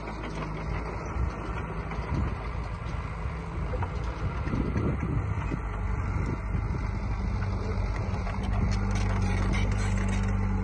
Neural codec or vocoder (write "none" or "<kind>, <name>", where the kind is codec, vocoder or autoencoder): none